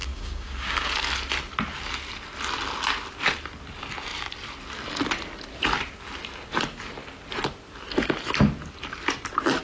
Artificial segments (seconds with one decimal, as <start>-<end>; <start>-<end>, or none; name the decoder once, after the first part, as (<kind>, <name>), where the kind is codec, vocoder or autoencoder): 0.0-0.9 (codec, DAC)

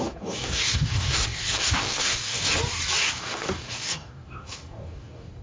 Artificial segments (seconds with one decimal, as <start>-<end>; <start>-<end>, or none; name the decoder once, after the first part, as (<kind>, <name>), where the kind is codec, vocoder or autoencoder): 0.0-2.5 (codec, DAC); 3.0-5.4

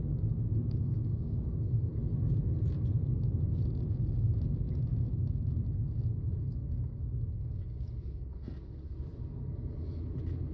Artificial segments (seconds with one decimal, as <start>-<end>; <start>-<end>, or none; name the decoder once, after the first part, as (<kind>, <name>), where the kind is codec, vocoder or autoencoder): 0.0-1.5 (codec, DAC); 4.9-5.5; 6.6-7.9

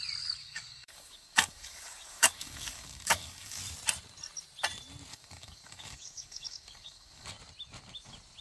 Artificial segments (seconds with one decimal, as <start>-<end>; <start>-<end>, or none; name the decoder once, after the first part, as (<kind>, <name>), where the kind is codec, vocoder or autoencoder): 0.4-3.6 (codec, DAC); 5.1-7.3